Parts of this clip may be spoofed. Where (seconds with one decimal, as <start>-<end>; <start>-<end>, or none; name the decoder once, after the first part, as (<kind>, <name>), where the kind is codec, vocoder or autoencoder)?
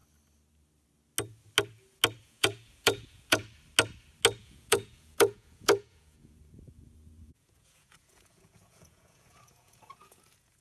2.2-3.4 (vocoder, Vocos); 4.4-10.6